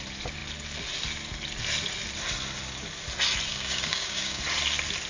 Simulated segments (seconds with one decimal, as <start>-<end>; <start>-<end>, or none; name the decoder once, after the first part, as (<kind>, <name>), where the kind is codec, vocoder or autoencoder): 3.5-4.4 (codec, DAC)